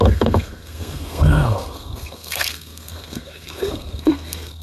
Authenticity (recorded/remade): remade